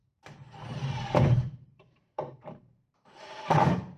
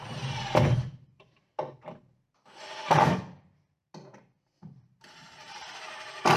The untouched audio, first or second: second